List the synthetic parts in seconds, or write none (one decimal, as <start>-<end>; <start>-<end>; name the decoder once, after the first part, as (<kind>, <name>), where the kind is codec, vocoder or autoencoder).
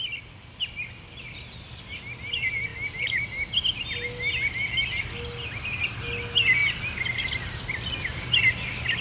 none